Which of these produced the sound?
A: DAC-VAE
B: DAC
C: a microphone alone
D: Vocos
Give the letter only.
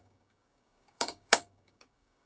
B